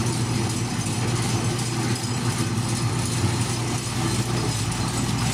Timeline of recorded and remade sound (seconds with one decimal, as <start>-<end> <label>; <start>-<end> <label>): 0.0-5.3 recorded